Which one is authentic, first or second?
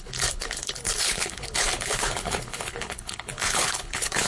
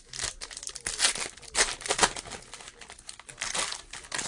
second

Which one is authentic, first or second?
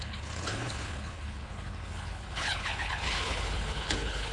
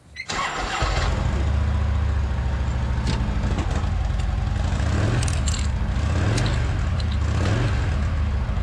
second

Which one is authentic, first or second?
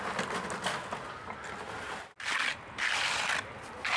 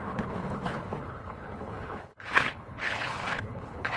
first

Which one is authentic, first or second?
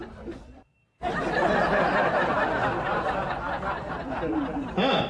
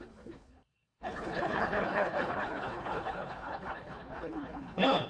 first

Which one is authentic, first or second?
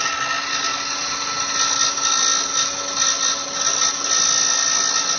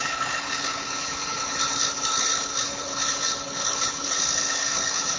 first